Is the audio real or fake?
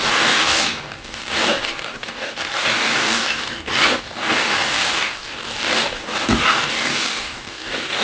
fake